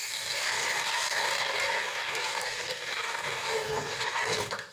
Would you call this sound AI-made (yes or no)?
yes